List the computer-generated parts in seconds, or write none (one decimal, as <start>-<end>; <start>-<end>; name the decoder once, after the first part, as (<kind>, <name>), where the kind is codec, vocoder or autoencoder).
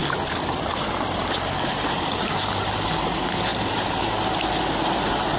0.0-2.9 (vocoder, BigVGAN v2); 3.5-4.2